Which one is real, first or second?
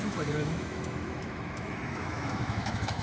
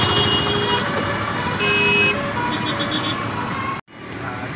second